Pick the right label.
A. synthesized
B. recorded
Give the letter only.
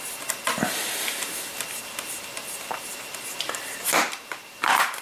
B